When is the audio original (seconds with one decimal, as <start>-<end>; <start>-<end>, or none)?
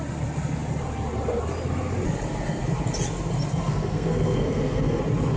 0.0-3.5; 5.0-5.4